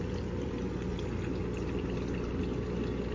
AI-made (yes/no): no